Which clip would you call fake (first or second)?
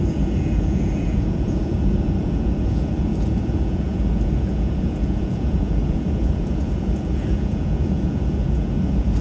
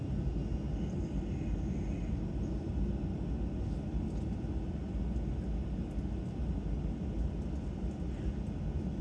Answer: first